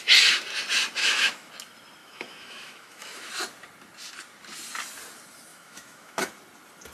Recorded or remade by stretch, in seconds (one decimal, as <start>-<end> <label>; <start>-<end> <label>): 0.0-1.0 recorded; 1.0-1.5 remade; 1.5-2.0 recorded; 2.0-3.3 remade; 3.3-5.5 recorded; 5.5-6.3 remade; 6.3-6.9 recorded